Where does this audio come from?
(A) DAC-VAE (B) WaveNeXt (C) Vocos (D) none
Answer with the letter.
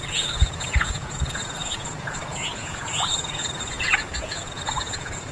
C